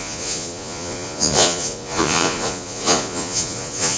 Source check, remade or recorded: remade